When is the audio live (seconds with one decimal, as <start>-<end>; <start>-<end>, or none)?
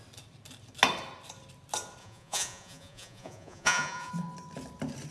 0.0-2.0; 4.1-5.1